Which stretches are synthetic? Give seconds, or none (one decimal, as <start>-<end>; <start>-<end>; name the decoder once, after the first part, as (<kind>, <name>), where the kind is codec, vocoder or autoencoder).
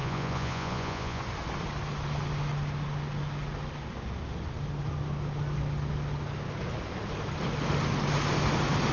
0.0-1.2 (vocoder, Vocos)